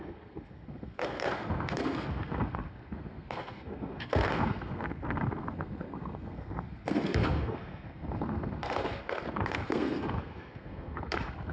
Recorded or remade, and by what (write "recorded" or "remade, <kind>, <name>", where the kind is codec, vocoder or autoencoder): remade, codec, SNAC